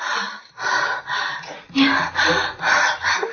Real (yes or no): yes